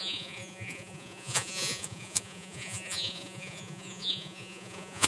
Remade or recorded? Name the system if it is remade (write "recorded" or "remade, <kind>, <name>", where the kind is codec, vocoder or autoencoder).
remade, vocoder, Vocos